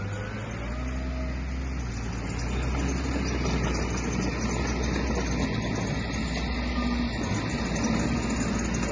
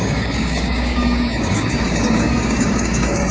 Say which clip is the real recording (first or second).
first